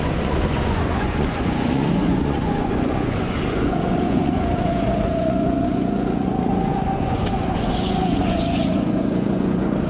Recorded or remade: remade